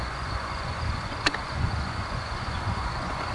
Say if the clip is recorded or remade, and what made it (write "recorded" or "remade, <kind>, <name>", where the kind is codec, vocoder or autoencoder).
remade, vocoder, Vocos